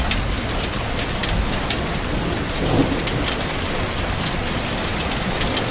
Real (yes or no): yes